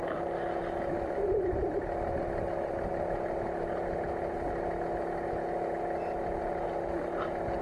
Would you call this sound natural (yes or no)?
yes